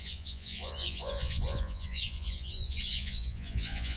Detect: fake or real fake